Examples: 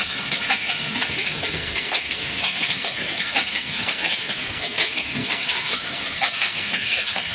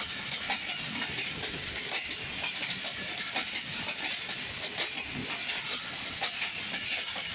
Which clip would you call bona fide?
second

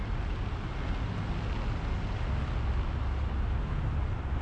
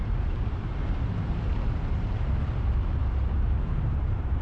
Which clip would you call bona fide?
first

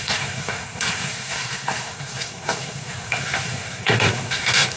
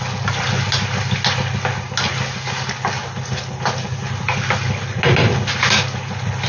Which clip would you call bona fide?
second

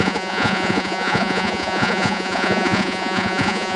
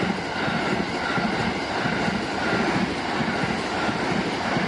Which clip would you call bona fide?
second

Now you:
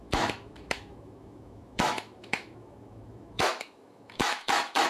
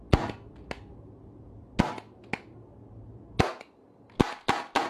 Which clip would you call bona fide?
second